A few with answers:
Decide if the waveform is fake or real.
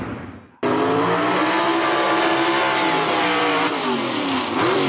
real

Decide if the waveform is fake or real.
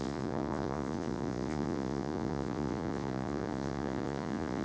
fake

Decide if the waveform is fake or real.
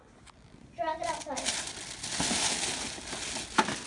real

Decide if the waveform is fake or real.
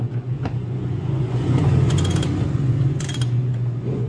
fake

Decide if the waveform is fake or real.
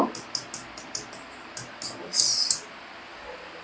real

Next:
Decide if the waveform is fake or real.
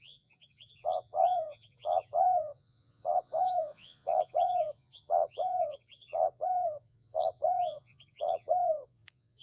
fake